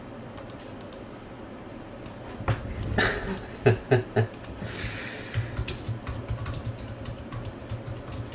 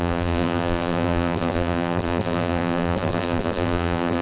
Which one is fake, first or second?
second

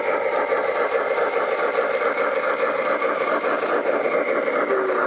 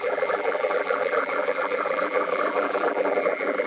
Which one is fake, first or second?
second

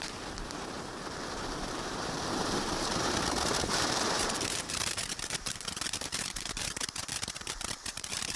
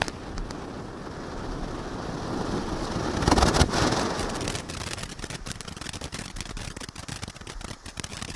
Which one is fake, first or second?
first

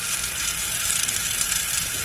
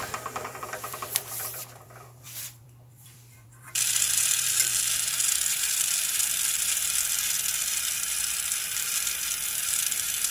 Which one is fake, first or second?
second